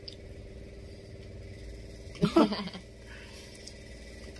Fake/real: real